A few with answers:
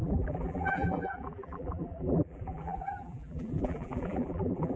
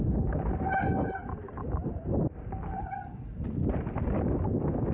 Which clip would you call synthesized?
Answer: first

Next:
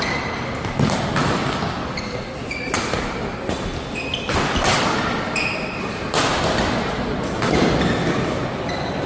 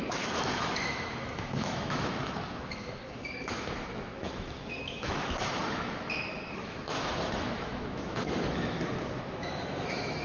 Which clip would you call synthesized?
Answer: second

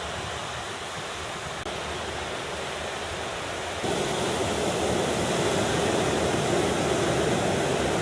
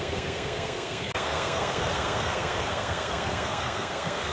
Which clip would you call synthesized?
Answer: second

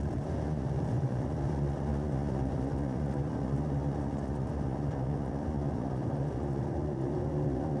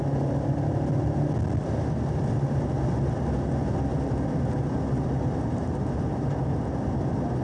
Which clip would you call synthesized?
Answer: first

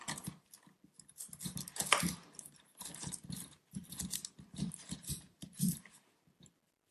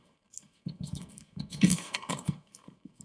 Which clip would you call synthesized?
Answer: second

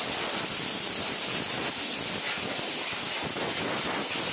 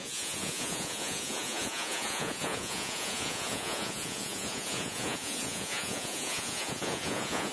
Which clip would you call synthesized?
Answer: second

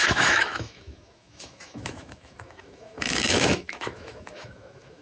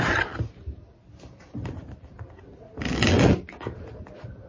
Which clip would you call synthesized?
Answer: first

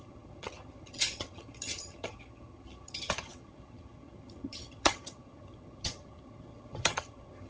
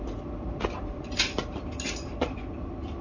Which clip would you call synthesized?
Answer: first